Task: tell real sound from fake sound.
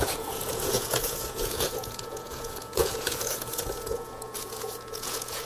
fake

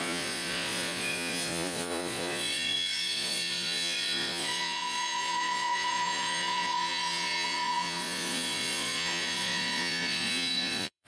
fake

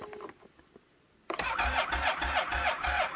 real